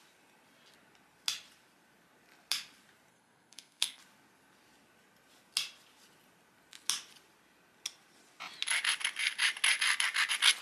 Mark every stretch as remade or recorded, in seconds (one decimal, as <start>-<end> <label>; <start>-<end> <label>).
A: 0.0-3.1 recorded; 3.1-4.0 remade; 4.0-10.6 recorded